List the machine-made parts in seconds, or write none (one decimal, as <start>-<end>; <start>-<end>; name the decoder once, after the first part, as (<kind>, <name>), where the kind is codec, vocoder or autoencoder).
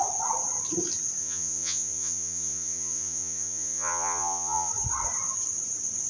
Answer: 1.2-4.7 (vocoder, Vocos)